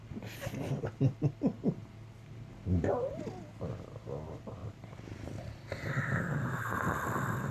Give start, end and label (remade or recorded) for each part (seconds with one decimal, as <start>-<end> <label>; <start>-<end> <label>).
0.0-7.5 recorded